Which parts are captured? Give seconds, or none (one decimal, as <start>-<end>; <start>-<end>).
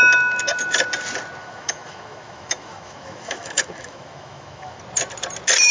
0.0-1.4; 4.8-5.7